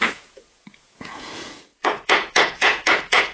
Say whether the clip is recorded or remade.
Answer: remade